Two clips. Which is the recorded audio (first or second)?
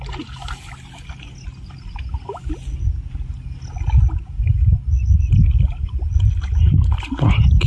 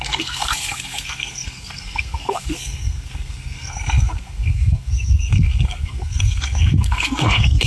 first